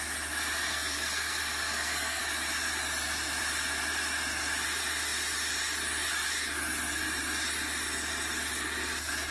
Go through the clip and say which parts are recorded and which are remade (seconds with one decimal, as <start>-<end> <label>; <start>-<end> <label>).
0.0-0.7 recorded; 0.7-2.2 remade; 2.2-9.3 recorded